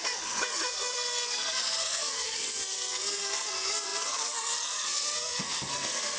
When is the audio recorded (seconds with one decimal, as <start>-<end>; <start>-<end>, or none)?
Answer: none